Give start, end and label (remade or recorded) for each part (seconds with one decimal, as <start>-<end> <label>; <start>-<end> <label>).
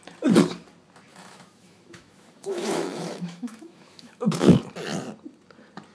0.0-1.1 recorded; 1.1-4.6 remade; 4.6-5.9 recorded